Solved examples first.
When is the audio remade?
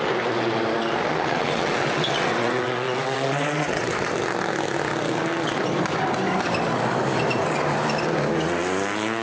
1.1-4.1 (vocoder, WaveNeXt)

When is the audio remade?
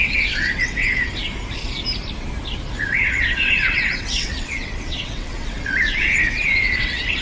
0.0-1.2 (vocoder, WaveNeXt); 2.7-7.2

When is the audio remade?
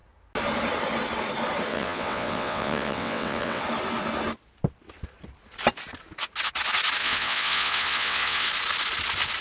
1.7-3.6 (vocoder, WaveNeXt); 7.0-8.5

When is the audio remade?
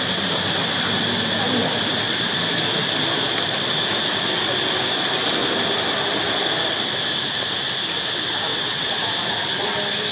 8.5-9.1 (vocoder, WaveNeXt)